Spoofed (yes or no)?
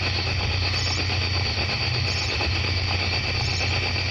no